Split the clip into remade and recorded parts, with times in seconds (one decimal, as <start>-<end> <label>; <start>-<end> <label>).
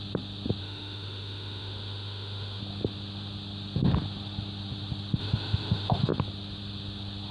0.0-0.6 recorded; 0.6-2.6 remade; 2.6-5.2 recorded; 5.2-6.1 remade; 6.1-7.3 recorded